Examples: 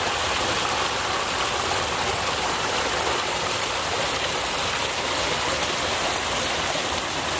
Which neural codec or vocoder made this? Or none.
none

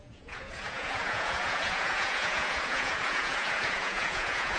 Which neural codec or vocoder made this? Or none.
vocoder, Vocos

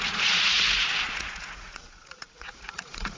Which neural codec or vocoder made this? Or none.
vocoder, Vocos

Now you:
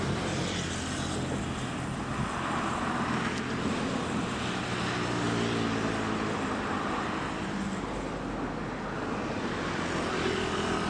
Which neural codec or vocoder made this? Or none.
none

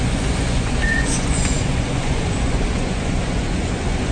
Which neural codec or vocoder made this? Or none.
vocoder, Vocos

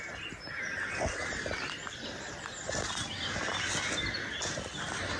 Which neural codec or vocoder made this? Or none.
none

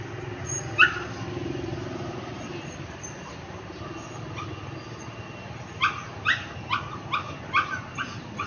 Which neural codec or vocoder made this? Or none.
none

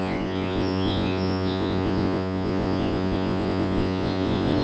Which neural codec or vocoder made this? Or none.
vocoder, Vocos